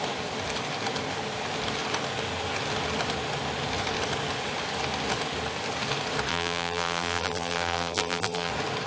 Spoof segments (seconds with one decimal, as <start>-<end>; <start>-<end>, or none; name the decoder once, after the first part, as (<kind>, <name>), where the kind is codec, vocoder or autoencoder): 6.3-8.5 (vocoder, BigVGAN v2)